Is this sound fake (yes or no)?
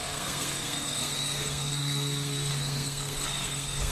yes